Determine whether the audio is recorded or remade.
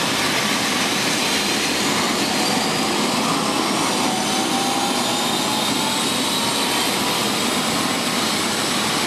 recorded